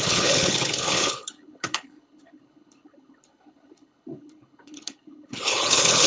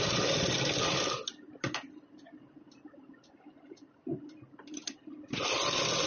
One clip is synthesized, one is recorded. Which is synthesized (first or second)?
first